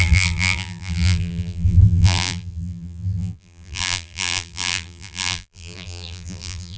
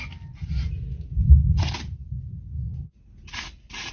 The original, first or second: second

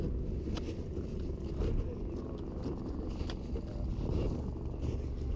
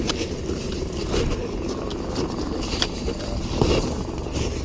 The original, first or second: first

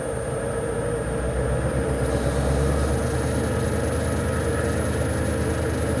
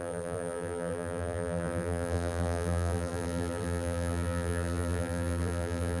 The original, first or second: first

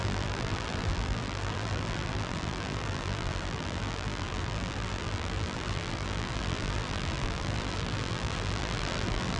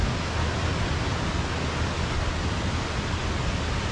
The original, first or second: second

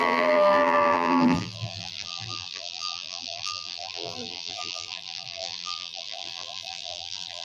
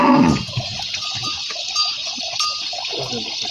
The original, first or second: second